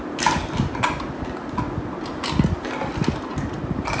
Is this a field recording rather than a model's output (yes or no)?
yes